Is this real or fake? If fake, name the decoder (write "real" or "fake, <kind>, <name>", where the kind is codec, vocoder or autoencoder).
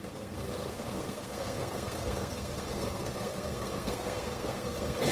fake, codec, SNAC